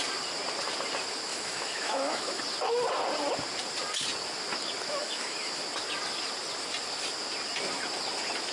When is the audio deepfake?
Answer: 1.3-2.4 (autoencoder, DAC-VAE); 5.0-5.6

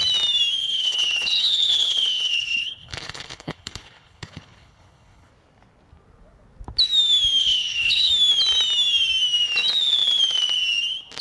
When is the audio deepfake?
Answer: 0.6-5.3 (codec, HILCodec); 7.4-8.1

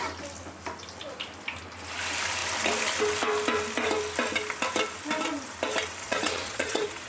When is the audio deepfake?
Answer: 6.0-7.1 (vocoder, Vocos)

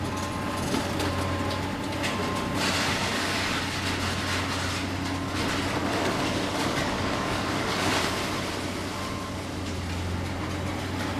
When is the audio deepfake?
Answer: 3.1-3.6 (codec, DAC); 5.8-7.9